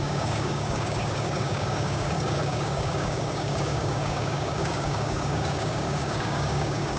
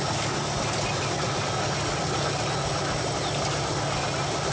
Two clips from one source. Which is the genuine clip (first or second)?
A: second